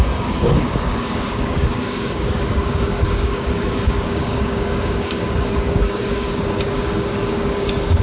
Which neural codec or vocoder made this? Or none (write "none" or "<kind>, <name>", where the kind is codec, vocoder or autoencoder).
codec, DAC